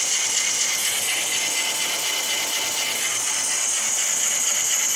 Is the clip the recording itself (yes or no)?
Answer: yes